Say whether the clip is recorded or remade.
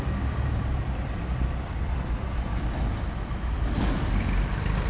recorded